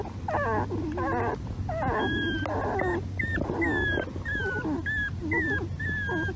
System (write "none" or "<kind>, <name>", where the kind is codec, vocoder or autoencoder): none